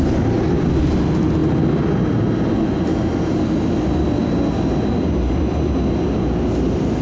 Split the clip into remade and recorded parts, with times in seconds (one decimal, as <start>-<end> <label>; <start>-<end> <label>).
0.0-7.0 recorded